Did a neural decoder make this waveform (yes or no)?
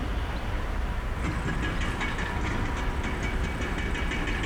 no